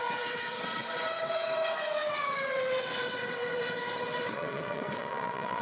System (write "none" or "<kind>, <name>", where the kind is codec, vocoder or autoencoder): vocoder, WaveNeXt